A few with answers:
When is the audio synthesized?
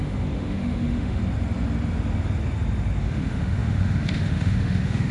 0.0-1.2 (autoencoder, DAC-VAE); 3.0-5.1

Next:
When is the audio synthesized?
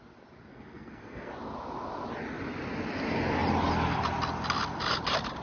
0.5-1.3 (codec, SNAC)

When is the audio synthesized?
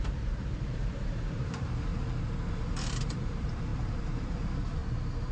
0.0-1.9 (vocoder, BigVGAN v2); 2.5-4.8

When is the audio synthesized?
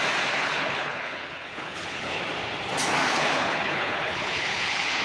0.4-2.2 (codec, HILCodec); 3.0-5.0